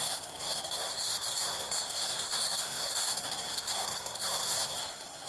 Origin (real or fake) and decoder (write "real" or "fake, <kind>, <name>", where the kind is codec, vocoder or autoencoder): fake, codec, SNAC